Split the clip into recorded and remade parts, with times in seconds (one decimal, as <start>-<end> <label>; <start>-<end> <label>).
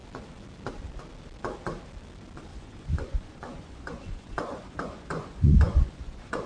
0.0-2.5 recorded; 2.5-6.5 remade